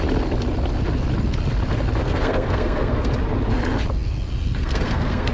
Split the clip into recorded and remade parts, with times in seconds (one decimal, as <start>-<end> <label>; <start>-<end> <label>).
0.0-2.0 recorded; 2.0-3.1 remade; 3.1-4.6 recorded; 4.6-5.3 remade